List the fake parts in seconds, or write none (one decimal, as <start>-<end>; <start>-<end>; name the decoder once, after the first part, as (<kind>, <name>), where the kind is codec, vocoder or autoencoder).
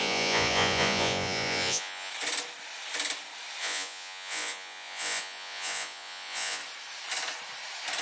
0.0-2.1 (vocoder, Vocos); 3.6-6.6